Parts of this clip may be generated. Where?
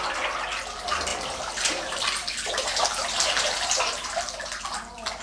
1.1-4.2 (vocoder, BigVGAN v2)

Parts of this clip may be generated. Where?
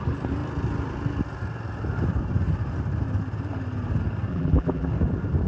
4.3-4.9 (vocoder, BigVGAN v2)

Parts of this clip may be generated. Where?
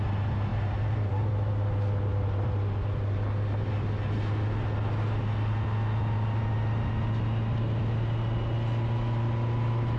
none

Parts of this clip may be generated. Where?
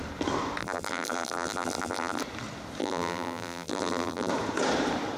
0.6-2.2 (vocoder, BigVGAN v2); 2.8-4.3